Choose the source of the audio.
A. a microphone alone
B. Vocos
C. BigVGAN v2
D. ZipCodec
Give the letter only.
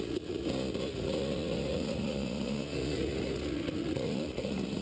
B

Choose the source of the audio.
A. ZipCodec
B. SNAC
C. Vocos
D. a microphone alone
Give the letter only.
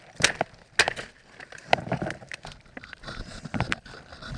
D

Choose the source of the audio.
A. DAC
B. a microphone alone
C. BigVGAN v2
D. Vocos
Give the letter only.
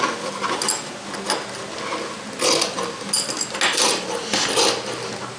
B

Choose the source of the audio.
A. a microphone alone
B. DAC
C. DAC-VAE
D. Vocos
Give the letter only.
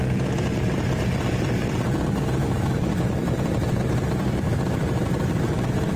A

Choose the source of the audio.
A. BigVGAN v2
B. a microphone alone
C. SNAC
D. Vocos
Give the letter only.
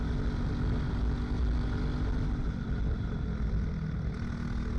B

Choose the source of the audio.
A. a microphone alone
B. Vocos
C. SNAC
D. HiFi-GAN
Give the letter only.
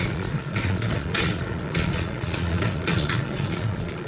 B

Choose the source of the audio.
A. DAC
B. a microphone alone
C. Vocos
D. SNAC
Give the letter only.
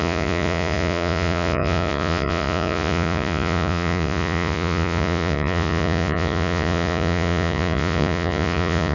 C